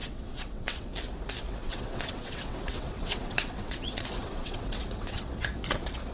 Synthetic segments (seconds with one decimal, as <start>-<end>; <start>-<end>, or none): 0.0-0.9; 1.6-5.3